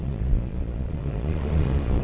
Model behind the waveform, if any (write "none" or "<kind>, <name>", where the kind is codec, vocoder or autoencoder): vocoder, Vocos